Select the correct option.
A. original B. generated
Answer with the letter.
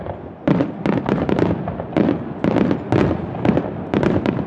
A